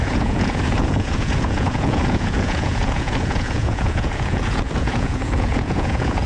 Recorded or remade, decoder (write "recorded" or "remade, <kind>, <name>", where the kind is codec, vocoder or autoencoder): remade, vocoder, Vocos